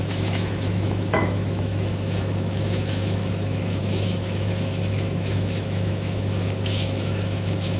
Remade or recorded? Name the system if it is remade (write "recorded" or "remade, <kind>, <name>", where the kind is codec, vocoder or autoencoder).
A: remade, autoencoder, DAC-VAE